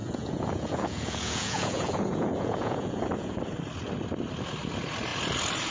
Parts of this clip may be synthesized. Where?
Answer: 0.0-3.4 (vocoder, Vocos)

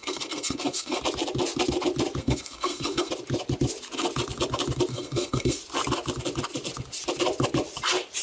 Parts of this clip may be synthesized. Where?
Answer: 0.0-1.0 (codec, SNAC); 2.2-3.1; 4.9-5.6

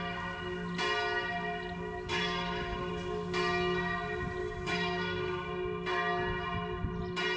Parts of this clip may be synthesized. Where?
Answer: 2.1-2.9 (codec, DAC); 4.4-5.5

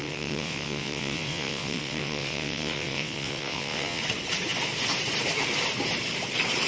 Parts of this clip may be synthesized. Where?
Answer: 0.0-4.0 (vocoder, WaveNeXt)

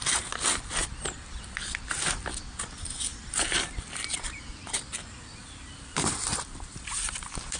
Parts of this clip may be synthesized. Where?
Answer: 3.1-7.6 (vocoder, BigVGAN v2)

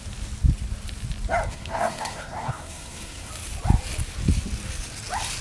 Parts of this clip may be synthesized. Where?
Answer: 1.5-3.3 (codec, SNAC)